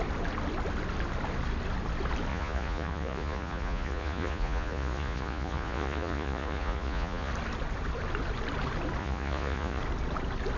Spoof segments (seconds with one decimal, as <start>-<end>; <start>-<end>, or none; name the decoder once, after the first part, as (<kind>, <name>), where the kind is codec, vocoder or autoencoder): 2.3-7.3 (vocoder, Vocos); 9.0-9.8